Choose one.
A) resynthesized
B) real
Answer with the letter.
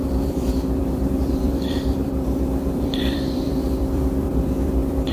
A